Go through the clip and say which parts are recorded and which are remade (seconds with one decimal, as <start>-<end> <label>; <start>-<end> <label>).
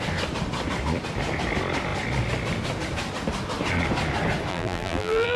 0.0-4.5 recorded; 4.5-5.4 remade